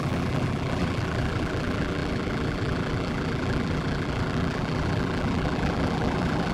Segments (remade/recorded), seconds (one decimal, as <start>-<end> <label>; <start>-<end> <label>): 0.0-6.5 remade